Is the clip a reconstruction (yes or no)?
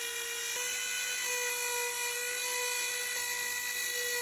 no